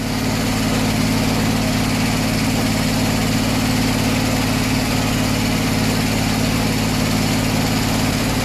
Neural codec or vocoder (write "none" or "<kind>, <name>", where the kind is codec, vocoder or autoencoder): none